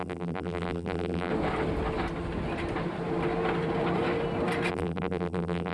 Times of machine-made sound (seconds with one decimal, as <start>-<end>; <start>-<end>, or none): 0.0-1.3; 4.7-5.7